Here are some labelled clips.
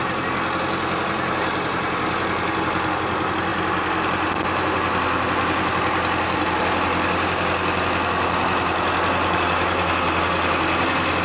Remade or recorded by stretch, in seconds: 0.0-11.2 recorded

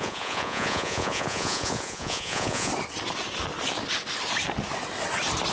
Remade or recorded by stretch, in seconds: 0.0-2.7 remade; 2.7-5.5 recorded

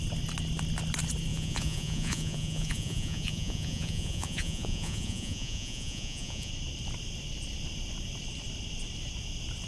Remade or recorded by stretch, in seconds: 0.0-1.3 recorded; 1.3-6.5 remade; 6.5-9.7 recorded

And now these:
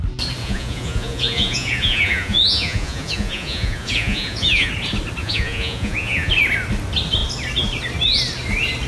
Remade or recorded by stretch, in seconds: 0.0-0.4 recorded; 0.4-4.7 remade; 4.7-5.2 recorded; 5.2-6.3 remade; 6.3-8.9 recorded

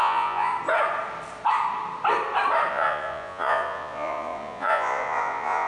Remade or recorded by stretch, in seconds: 0.0-0.5 remade; 0.5-2.7 recorded; 2.7-5.7 remade